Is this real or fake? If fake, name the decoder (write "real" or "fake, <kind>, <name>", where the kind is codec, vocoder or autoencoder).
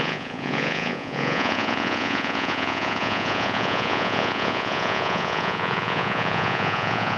fake, vocoder, Vocos